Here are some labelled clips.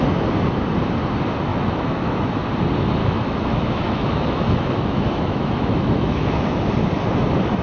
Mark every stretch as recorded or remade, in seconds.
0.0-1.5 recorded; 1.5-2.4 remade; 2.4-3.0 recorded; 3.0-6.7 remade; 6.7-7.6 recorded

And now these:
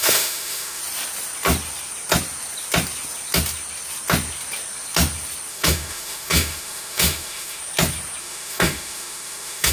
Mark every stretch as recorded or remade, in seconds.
0.0-0.8 remade; 0.8-5.5 recorded; 5.5-7.6 remade; 7.6-8.2 recorded; 8.2-9.7 remade

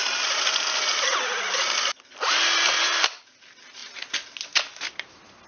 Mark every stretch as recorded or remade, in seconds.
0.0-5.5 recorded

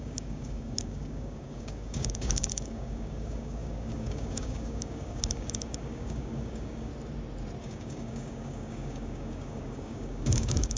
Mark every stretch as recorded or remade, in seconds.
0.0-6.9 remade; 6.9-7.6 recorded; 7.6-10.8 remade

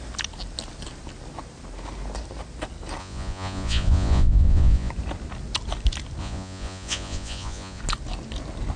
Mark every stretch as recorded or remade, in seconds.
0.0-3.0 recorded; 3.0-4.9 remade; 4.9-6.2 recorded; 6.2-7.8 remade; 7.8-8.8 recorded